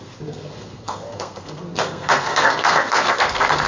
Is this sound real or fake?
fake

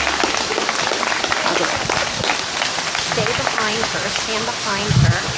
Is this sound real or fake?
real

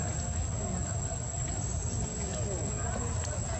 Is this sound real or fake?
real